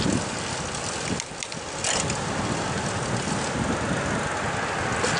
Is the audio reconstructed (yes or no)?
no